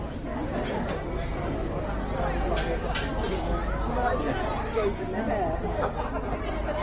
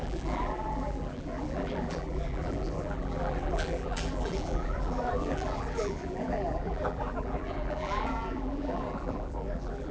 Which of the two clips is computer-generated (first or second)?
second